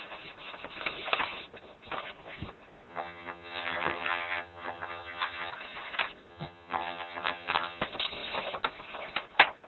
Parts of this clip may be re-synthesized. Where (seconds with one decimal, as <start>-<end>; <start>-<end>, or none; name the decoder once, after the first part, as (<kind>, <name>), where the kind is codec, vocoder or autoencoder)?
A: 2.9-5.5 (vocoder, HiFi-GAN); 6.3-7.8